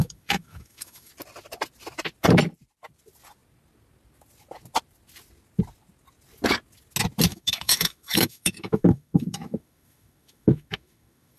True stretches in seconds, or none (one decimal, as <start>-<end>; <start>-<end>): 1.1-7.3